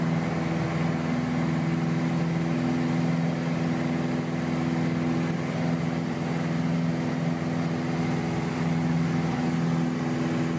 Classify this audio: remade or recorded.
recorded